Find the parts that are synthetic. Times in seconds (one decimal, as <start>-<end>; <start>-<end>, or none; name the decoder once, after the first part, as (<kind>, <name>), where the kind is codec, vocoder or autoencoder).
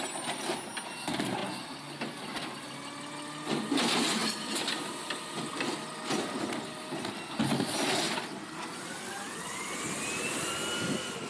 none